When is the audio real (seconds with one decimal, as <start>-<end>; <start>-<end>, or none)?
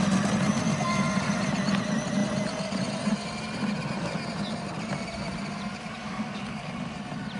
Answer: 0.0-6.0; 6.7-7.4